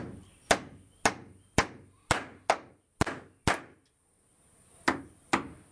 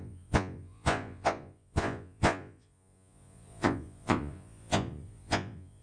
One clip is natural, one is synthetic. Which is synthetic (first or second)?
second